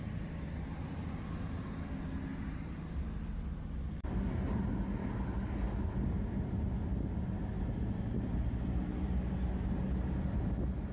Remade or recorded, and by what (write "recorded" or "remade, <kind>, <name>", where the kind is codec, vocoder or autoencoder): recorded